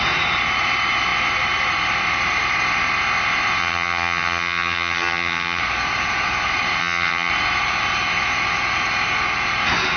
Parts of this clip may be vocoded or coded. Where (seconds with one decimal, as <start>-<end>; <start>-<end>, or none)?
3.6-5.6; 6.8-7.3